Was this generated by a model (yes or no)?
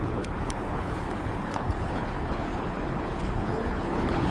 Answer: yes